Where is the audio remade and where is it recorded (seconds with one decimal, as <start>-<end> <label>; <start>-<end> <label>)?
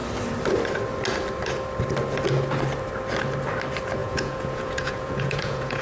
0.0-4.0 recorded; 4.0-5.8 remade